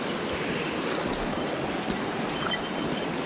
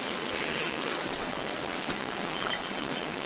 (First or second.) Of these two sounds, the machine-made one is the second